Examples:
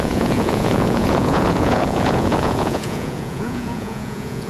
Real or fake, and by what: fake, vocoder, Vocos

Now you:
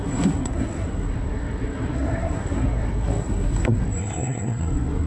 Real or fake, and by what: fake, codec, SNAC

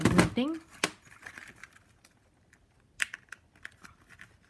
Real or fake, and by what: real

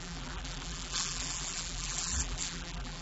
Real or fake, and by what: fake, vocoder, BigVGAN v2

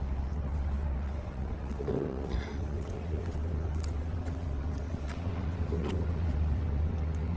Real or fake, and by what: fake, vocoder, WaveNeXt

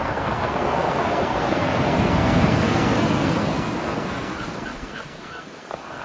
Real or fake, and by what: fake, codec, SNAC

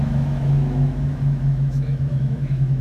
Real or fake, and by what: fake, autoencoder, DAC-VAE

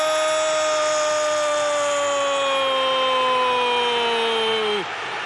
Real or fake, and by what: real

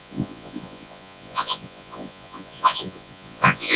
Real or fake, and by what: fake, vocoder, Vocos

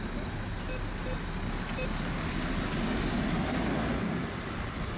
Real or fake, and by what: real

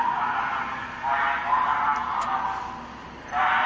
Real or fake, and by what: real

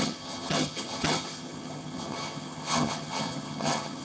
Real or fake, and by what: fake, vocoder, HiFi-GAN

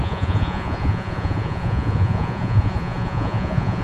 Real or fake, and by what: fake, vocoder, Vocos